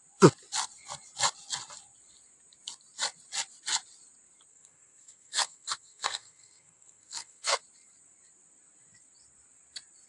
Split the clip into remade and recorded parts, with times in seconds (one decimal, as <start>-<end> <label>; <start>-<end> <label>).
0.0-4.5 recorded; 4.5-7.6 remade; 7.6-10.1 recorded